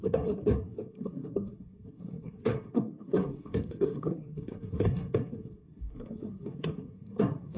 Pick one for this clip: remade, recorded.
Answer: remade